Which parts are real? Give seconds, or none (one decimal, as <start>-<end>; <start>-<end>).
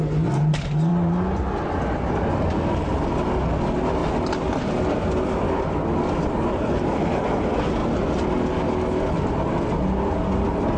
0.0-10.8